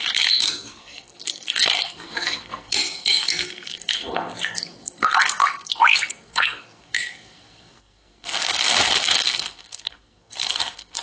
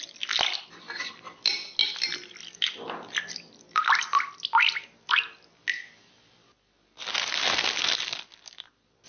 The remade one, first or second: first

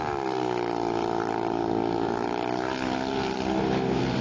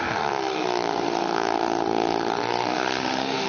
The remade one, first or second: second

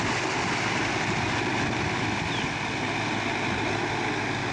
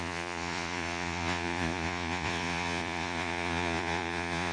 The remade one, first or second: second